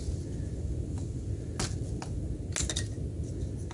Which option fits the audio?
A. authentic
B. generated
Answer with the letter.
A